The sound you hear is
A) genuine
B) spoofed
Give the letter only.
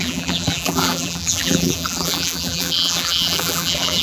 B